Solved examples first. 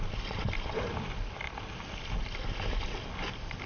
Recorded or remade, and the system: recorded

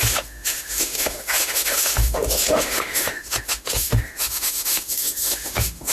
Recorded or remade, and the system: remade, autoencoder, DAC-VAE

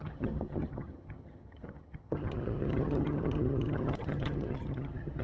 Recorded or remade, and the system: remade, vocoder, HiFi-GAN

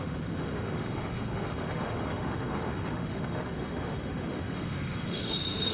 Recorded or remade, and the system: remade, autoencoder, DAC-VAE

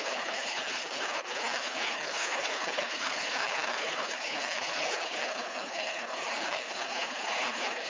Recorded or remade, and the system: remade, codec, HILCodec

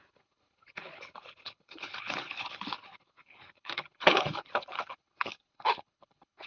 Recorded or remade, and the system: remade, codec, HILCodec